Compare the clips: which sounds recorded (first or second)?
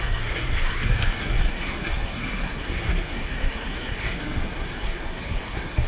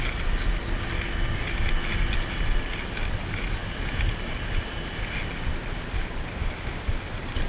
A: second